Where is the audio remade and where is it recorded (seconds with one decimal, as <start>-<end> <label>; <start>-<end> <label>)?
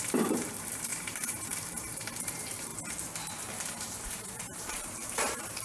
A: 0.0-2.7 remade; 2.7-3.5 recorded; 3.5-5.6 remade